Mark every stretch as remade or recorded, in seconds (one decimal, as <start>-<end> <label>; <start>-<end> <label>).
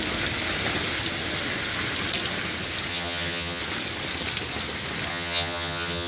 0.0-2.9 recorded; 2.9-3.6 remade; 3.6-5.1 recorded; 5.1-6.1 remade